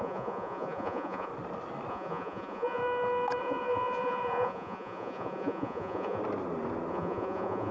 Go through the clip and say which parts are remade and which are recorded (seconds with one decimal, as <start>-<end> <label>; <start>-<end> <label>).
0.0-1.3 remade; 1.3-1.9 recorded; 1.9-2.8 remade; 2.8-3.4 recorded; 3.4-6.2 remade; 6.2-6.9 recorded; 6.9-7.7 remade